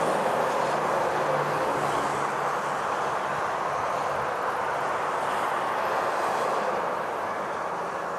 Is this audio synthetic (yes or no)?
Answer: no